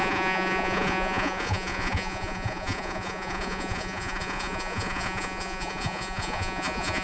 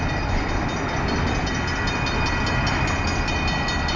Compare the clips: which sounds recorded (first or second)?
second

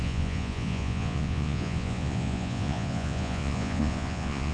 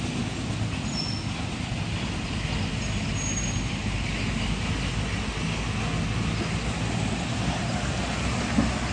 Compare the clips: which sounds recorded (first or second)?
second